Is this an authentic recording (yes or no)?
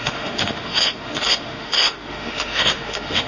no